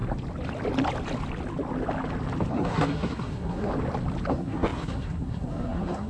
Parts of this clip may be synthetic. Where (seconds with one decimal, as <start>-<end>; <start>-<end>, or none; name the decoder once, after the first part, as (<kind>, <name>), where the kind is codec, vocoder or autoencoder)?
2.5-3.7 (codec, SNAC); 4.3-6.1